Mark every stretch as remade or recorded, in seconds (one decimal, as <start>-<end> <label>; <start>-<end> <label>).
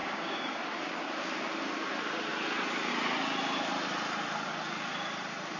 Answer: 0.0-1.1 remade; 1.1-5.6 recorded